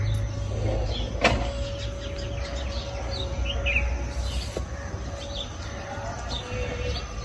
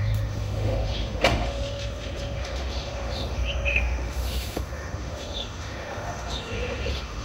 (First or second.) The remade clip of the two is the second